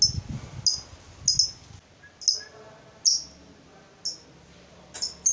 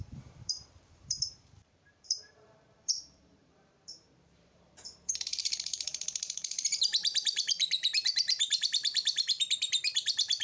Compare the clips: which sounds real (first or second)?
first